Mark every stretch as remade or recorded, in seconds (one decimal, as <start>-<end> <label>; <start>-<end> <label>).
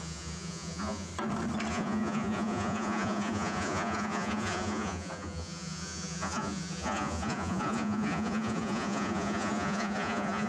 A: 0.0-1.1 remade; 1.1-1.7 recorded; 1.7-10.5 remade